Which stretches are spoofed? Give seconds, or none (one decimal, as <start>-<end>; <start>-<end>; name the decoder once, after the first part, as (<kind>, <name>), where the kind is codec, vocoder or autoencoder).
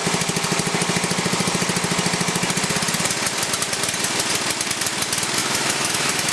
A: 5.4-6.3 (autoencoder, DAC-VAE)